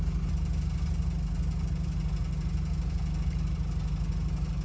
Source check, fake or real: real